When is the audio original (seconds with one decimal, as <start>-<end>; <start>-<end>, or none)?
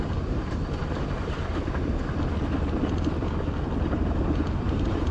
1.5-4.6